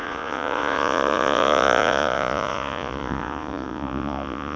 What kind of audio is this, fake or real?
fake